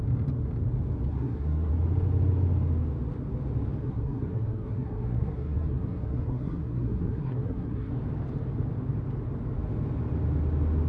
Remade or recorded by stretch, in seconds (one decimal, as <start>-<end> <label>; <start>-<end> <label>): 0.0-1.1 recorded; 1.1-1.7 remade; 1.7-3.8 recorded; 3.8-7.9 remade; 7.9-10.9 recorded